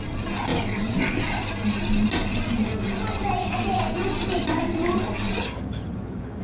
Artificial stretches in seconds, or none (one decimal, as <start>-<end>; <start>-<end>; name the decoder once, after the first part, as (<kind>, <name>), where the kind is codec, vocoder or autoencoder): 5.4-6.4 (vocoder, HiFi-GAN)

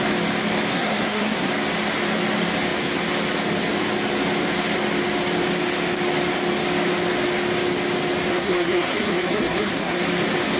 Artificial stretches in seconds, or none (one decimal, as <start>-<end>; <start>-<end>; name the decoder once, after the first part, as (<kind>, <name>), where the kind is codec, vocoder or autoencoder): 0.7-1.5 (codec, SNAC); 8.3-10.0

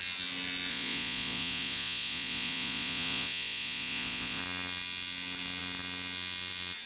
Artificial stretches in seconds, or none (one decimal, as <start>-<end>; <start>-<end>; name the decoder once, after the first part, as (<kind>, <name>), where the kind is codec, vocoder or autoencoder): 0.7-4.4 (vocoder, Vocos)

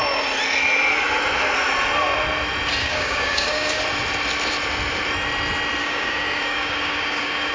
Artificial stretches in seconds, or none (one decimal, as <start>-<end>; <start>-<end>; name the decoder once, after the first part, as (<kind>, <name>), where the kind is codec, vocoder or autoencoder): 2.8-3.8 (codec, DAC); 5.8-7.5

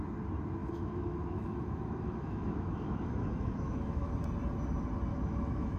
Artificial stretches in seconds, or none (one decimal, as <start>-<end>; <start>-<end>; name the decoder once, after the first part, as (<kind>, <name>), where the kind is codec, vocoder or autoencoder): 0.6-4.1 (autoencoder, DAC-VAE); 5.1-5.8

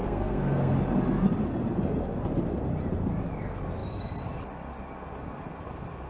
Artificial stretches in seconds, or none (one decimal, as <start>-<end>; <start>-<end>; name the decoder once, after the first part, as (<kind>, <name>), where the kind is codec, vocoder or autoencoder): 0.0-0.7 (codec, SNAC)

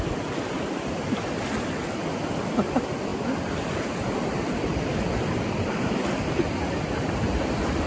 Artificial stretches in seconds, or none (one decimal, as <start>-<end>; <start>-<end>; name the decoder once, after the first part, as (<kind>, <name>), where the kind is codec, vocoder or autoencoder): none

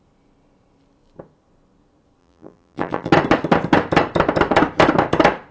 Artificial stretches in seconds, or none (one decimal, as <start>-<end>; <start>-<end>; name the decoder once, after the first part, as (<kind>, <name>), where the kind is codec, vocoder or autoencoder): 2.2-3.1 (vocoder, BigVGAN v2)